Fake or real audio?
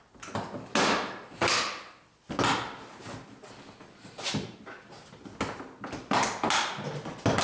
real